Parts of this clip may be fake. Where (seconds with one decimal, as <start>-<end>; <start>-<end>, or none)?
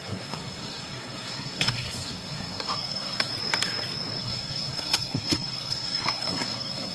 0.0-3.3; 4.2-6.9